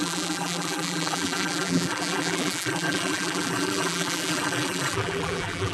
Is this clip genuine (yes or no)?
no